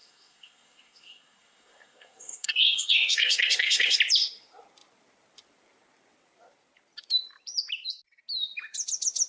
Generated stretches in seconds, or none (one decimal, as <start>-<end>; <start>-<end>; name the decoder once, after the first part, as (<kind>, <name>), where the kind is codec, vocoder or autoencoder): 0.0-4.0 (codec, SNAC)